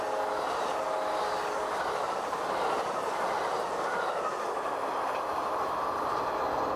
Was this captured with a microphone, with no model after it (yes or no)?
yes